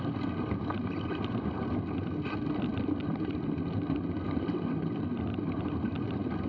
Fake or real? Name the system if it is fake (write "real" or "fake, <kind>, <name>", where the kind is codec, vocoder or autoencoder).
real